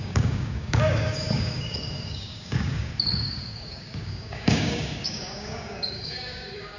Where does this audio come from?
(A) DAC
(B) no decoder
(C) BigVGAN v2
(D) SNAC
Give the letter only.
A